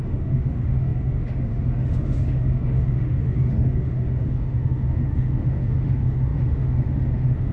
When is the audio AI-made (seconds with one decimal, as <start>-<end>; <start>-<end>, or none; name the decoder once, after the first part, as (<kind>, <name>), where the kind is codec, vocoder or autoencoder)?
0.0-7.5 (autoencoder, DAC-VAE)